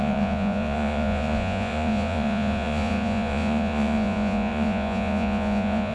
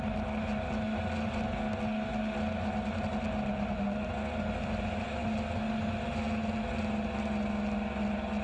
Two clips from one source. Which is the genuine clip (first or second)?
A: second